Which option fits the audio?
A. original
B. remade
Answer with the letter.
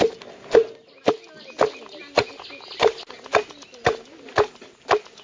A